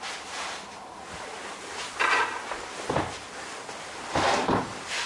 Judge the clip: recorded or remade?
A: recorded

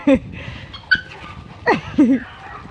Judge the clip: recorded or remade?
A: recorded